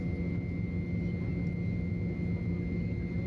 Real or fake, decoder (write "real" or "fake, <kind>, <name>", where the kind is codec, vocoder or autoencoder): real